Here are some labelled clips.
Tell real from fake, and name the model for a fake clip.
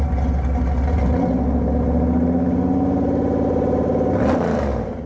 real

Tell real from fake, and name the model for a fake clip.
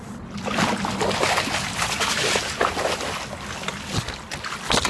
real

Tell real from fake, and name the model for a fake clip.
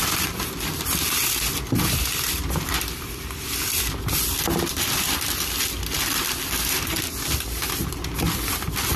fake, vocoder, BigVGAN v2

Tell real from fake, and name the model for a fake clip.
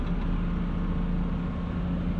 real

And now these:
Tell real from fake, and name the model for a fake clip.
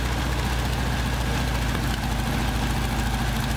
real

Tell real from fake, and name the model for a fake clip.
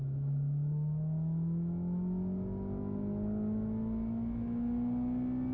real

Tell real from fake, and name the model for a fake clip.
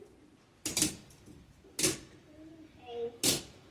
real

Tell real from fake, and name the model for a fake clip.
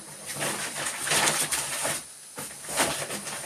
real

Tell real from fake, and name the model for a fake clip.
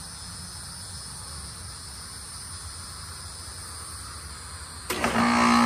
real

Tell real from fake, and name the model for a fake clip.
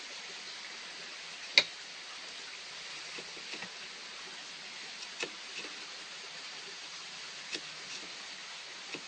real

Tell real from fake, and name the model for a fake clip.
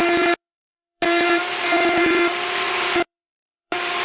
fake, vocoder, BigVGAN v2